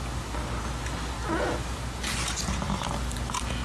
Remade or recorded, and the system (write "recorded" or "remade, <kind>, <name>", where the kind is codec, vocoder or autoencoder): recorded